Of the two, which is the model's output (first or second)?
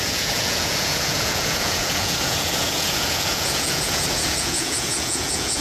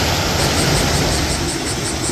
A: first